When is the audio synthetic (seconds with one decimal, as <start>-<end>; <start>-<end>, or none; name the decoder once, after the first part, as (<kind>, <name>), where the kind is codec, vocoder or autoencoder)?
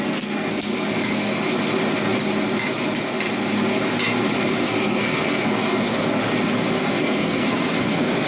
0.0-0.7 (codec, SNAC); 4.4-6.2; 6.8-8.3